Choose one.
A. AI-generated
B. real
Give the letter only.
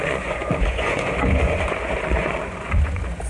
A